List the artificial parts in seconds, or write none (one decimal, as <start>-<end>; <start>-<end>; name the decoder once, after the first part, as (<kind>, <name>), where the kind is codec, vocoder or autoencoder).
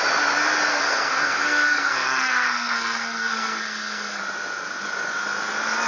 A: 0.7-4.2 (codec, SNAC)